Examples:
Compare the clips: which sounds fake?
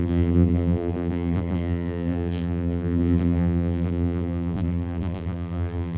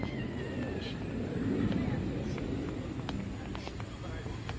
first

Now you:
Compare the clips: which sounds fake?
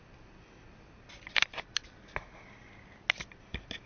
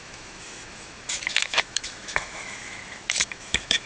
second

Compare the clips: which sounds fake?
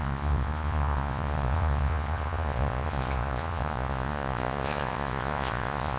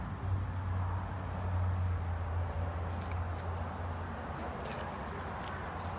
first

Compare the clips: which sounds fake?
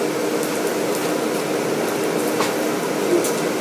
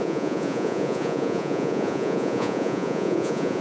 second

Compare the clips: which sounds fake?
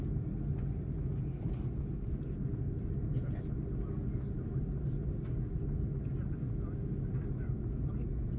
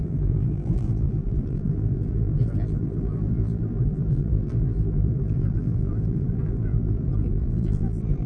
second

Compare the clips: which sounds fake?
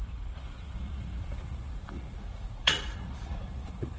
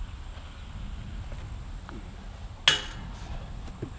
first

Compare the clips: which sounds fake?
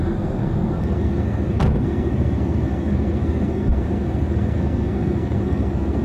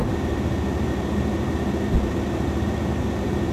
first